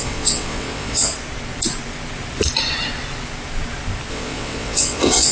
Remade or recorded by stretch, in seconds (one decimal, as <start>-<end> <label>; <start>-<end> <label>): 0.0-1.1 remade; 1.1-4.1 recorded; 4.1-5.3 remade